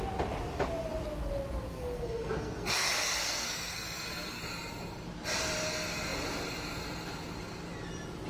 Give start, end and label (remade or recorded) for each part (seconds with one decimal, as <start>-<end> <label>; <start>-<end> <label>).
0.0-1.7 recorded; 1.7-4.4 remade; 4.4-8.3 recorded